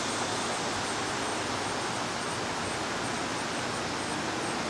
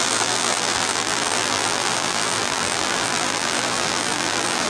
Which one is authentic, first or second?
first